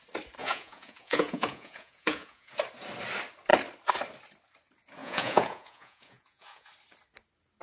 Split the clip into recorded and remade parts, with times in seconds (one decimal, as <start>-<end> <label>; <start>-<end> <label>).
0.0-0.4 recorded; 0.4-2.5 remade; 2.5-5.0 recorded; 5.0-6.7 remade; 6.7-7.6 recorded